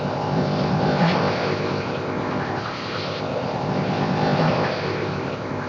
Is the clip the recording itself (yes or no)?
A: no